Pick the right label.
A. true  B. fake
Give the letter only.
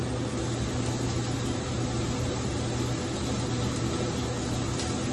A